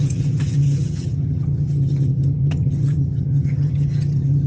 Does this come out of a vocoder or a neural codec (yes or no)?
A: yes